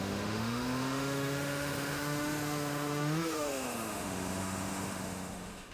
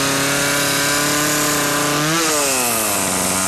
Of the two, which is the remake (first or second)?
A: first